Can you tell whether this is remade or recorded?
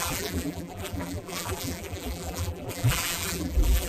remade